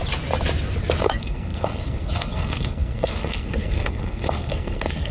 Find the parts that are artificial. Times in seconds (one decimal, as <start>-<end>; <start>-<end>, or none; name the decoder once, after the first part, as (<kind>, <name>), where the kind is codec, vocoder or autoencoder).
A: 1.0-5.1 (codec, SNAC)